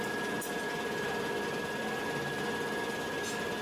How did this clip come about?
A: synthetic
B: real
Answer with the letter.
B